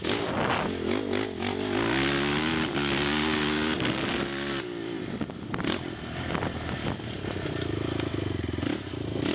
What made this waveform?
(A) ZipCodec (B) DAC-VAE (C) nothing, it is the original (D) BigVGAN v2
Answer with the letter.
C